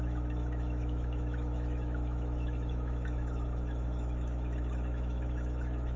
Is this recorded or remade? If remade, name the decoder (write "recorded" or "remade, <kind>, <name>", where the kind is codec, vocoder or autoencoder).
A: remade, autoencoder, DAC-VAE